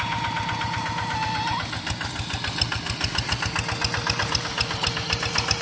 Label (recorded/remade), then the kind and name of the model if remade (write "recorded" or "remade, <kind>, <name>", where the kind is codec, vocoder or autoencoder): recorded